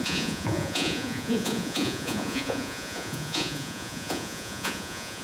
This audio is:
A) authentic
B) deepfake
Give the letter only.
B